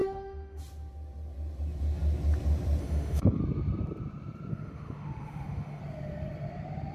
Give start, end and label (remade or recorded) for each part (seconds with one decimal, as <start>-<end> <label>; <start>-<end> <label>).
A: 0.0-0.6 remade; 0.6-2.8 recorded; 2.8-3.4 remade; 3.4-4.5 recorded; 4.5-5.8 remade; 5.8-6.9 recorded